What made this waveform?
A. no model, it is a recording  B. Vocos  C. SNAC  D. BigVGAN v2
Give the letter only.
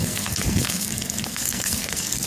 C